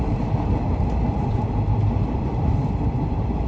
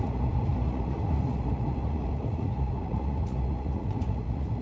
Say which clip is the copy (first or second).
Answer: second